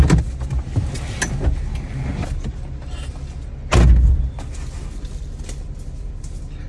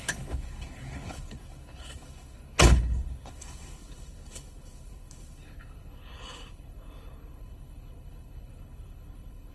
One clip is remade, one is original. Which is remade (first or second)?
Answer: second